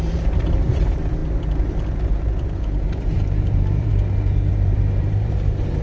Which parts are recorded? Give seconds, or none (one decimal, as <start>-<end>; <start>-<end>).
1.2-1.9; 3.9-4.5